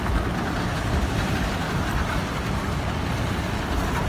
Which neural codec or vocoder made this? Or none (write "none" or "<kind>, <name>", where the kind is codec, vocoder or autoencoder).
none